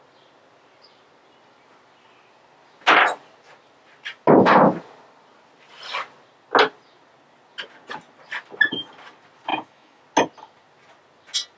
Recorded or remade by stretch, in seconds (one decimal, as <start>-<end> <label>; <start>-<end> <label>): 0.0-9.5 recorded; 9.5-10.0 remade; 10.0-11.6 recorded